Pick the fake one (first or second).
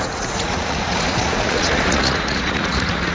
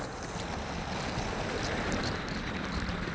first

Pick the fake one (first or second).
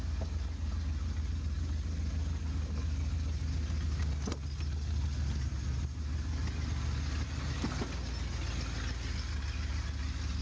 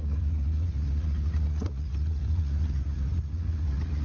second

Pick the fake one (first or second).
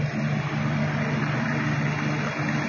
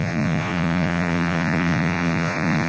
second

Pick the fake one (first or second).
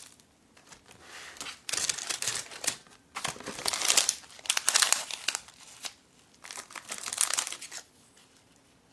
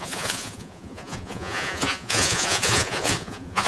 second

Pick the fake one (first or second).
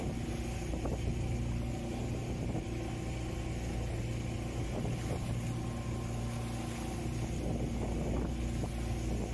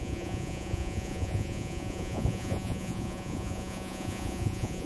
second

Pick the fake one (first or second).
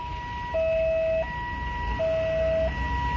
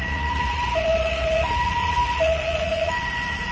second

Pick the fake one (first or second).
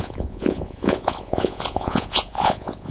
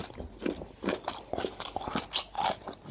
first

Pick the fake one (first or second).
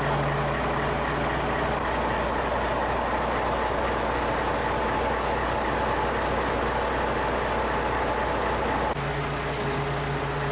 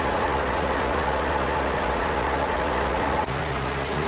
second